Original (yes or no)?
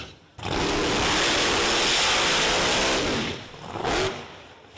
yes